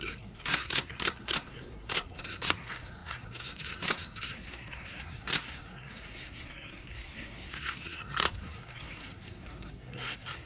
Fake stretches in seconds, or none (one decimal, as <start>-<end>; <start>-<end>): 0.0-10.5